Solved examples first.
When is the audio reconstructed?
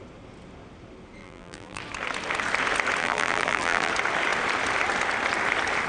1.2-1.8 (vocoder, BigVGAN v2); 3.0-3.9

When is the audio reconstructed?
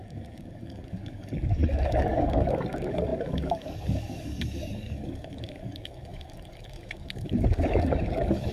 0.0-8.5 (codec, DAC)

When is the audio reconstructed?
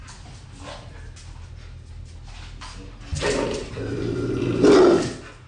none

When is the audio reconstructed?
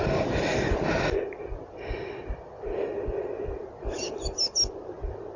none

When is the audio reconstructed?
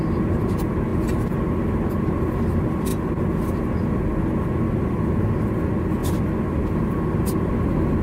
none